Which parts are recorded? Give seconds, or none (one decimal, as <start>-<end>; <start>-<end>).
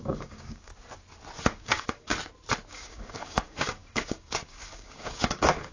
0.7-1.4; 2.1-2.7